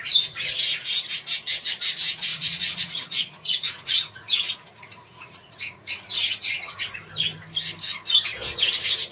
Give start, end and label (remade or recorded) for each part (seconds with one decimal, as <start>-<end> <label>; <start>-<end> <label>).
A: 0.0-2.3 recorded; 2.3-6.8 remade; 6.8-8.4 recorded; 8.4-9.1 remade